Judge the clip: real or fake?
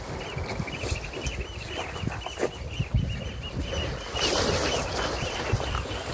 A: real